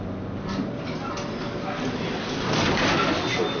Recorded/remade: recorded